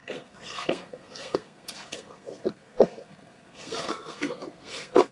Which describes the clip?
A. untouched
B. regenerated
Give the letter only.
B